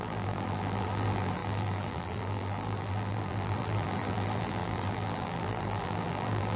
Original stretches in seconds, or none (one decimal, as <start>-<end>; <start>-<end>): none